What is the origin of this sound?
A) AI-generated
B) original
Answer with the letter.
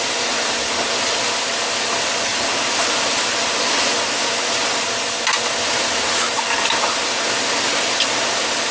B